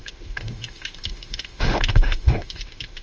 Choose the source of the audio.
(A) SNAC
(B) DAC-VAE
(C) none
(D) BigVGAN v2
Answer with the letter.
B